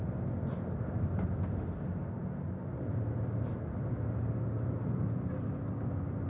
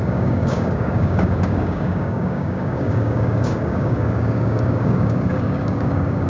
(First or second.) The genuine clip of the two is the first